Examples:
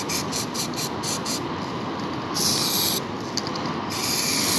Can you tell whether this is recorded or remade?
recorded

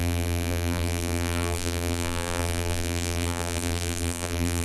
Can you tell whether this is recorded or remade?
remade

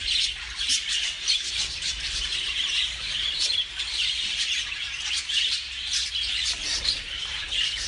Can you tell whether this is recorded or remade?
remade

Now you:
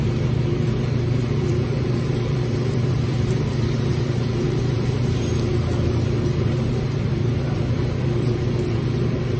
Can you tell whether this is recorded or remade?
remade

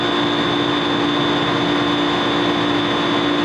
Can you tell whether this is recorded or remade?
recorded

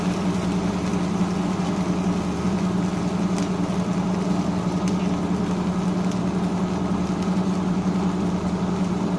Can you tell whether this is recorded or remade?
recorded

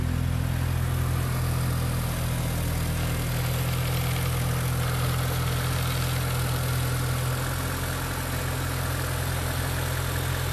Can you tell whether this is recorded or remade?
recorded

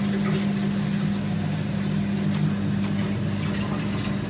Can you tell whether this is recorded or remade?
recorded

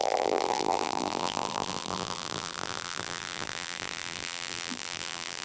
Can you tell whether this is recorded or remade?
remade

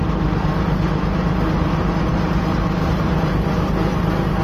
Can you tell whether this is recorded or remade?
remade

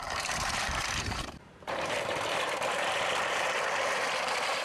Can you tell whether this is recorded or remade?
remade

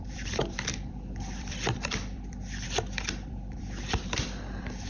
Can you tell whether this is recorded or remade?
remade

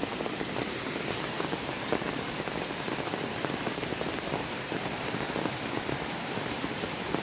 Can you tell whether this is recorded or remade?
remade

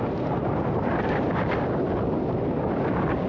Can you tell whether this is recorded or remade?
recorded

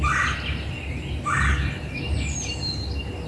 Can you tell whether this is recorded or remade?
recorded